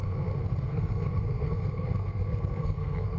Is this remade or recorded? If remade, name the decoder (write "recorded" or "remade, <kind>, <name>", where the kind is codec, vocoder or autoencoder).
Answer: remade, codec, SNAC